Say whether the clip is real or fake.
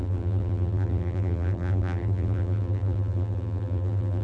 fake